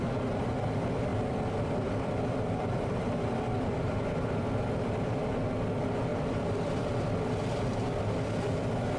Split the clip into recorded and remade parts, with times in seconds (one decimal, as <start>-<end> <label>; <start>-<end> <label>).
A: 0.0-1.1 recorded; 1.1-4.6 remade; 4.6-6.1 recorded; 6.1-6.9 remade; 6.9-9.0 recorded